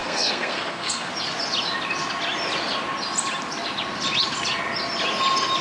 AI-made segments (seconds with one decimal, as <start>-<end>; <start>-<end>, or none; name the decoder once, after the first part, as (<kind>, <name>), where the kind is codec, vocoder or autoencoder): 0.0-1.1 (codec, SNAC)